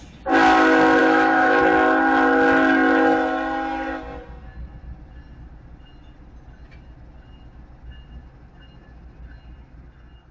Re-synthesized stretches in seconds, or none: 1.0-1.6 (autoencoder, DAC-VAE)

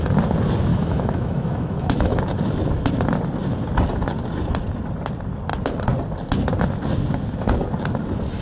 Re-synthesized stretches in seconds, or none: 0.7-2.2 (autoencoder, DAC-VAE)

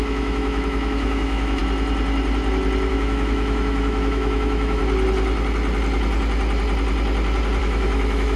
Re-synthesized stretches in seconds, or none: 0.0-1.6 (autoencoder, DAC-VAE); 2.9-4.8; 7.6-8.4